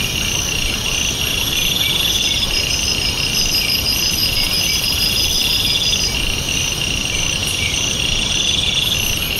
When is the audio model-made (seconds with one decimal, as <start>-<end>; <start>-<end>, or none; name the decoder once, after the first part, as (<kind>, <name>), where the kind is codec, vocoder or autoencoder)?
1.3-2.7 (vocoder, BigVGAN v2); 7.4-8.9